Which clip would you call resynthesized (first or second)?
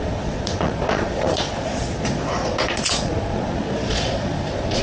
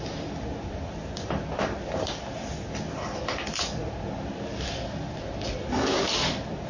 first